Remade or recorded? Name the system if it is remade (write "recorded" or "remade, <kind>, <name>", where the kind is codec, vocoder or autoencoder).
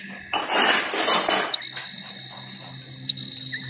recorded